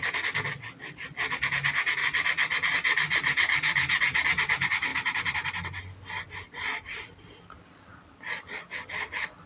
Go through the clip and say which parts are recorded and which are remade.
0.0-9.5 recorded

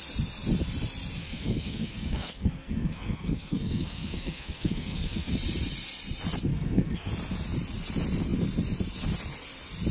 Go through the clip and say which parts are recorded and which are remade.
0.0-1.2 recorded; 1.2-5.3 remade; 5.3-6.5 recorded; 6.5-7.1 remade; 7.1-9.9 recorded

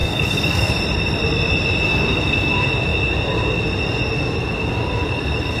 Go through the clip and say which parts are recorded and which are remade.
0.0-0.7 remade; 0.7-1.9 recorded; 1.9-2.5 remade; 2.5-5.6 recorded

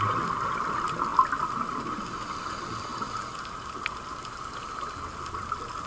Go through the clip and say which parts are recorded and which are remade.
0.0-5.9 recorded

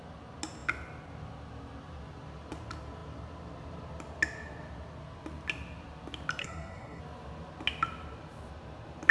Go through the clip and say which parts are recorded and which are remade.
0.0-6.4 recorded; 6.4-7.0 remade; 7.0-9.1 recorded